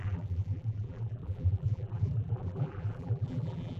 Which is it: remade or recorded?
remade